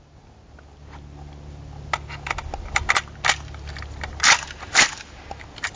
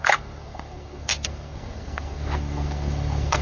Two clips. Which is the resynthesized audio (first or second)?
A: second